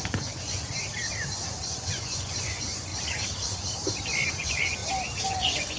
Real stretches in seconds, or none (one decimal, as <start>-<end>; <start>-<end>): 0.7-1.5; 2.9-4.3; 4.8-5.3